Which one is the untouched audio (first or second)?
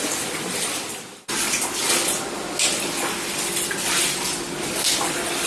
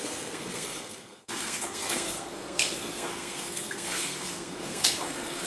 first